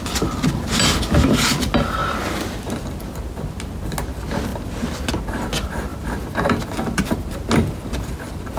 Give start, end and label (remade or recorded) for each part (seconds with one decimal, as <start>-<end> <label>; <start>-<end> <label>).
0.0-8.6 recorded

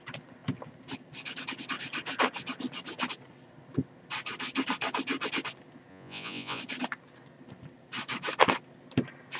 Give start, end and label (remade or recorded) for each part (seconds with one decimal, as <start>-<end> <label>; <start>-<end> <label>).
0.0-5.9 recorded; 5.9-6.6 remade; 6.6-9.4 recorded

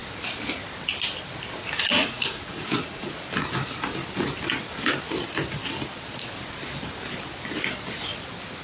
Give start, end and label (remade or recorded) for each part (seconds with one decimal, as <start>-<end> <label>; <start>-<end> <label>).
0.0-2.0 recorded; 2.0-3.1 remade; 3.1-8.6 recorded

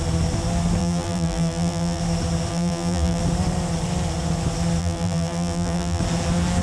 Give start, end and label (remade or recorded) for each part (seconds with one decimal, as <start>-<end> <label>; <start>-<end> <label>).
0.0-0.8 recorded; 0.8-2.0 remade; 2.0-2.5 recorded; 2.5-3.2 remade; 3.2-4.8 recorded; 4.8-6.0 remade; 6.0-6.6 recorded